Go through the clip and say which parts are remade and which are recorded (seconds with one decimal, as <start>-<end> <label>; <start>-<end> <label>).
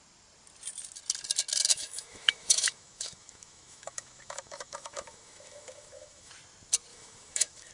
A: 0.0-1.7 recorded; 1.7-6.3 remade; 6.3-6.9 recorded; 6.9-7.7 remade